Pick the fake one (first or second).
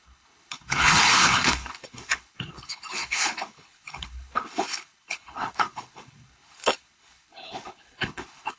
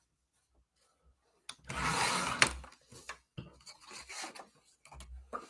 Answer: first